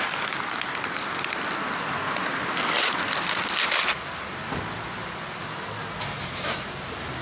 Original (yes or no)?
yes